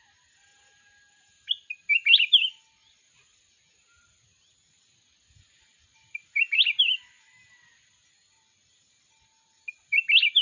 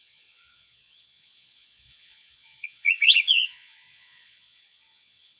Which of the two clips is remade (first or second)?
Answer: second